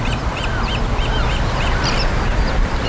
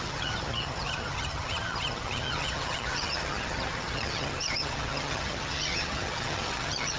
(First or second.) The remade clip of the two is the second